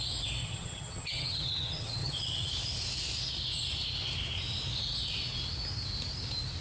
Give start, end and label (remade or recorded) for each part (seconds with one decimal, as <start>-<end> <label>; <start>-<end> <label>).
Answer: 0.0-0.4 recorded; 0.4-2.5 remade; 2.5-6.6 recorded